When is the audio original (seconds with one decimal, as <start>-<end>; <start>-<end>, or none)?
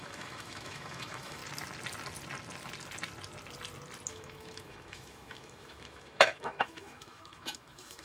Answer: 1.4-4.1